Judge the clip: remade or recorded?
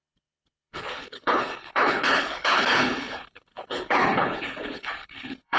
remade